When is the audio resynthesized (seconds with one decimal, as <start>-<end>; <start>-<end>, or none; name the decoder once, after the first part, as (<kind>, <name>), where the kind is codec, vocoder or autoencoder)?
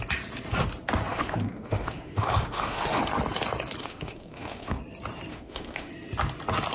1.1-3.0 (autoencoder, DAC-VAE); 3.8-4.8; 5.3-5.9